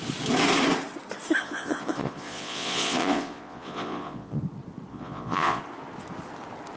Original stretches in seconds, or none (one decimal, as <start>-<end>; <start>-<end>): 0.0-1.4; 4.4-4.9; 5.6-6.8